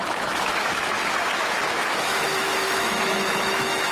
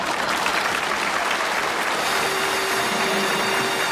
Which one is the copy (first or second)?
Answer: first